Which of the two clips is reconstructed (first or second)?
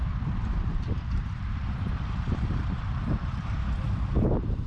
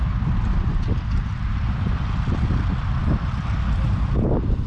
first